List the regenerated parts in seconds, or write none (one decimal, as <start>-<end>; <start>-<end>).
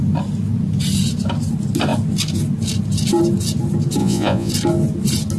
4.0-4.5